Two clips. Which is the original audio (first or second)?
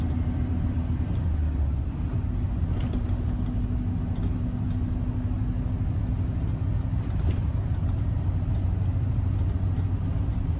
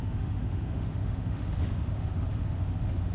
first